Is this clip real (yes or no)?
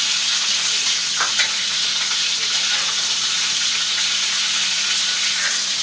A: no